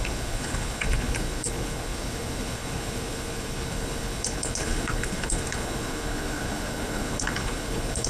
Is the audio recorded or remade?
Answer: remade